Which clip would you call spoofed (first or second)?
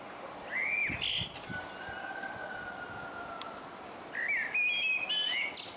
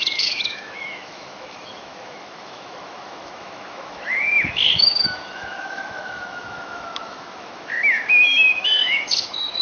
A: second